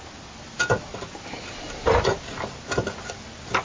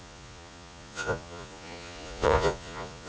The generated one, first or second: second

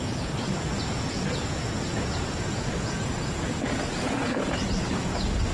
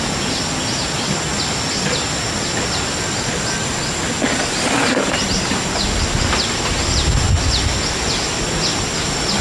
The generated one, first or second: first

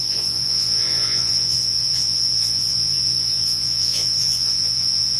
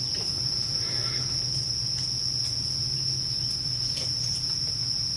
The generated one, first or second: first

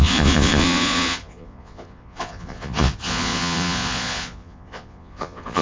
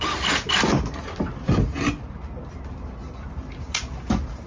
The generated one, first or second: first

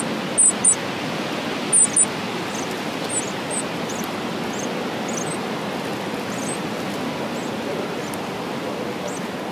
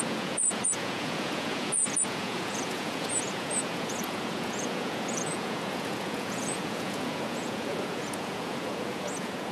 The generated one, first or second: second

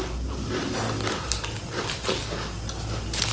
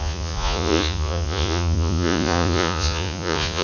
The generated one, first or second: second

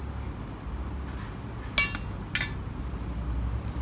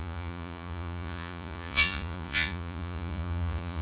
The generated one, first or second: second